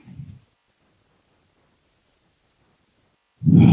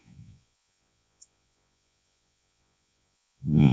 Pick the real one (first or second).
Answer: first